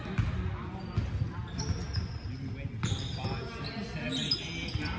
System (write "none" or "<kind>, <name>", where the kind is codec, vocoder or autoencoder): none